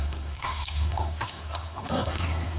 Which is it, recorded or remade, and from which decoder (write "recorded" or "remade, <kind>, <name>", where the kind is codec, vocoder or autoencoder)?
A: remade, codec, SNAC